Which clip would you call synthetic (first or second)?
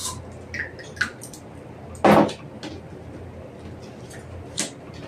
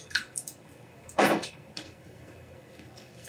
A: second